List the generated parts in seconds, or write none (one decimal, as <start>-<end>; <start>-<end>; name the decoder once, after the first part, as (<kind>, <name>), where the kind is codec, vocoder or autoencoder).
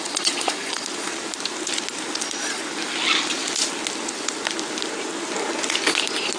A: 0.0-1.1 (vocoder, Vocos); 2.2-2.6